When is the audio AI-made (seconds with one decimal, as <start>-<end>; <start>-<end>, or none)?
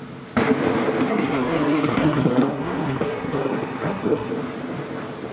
1.1-4.3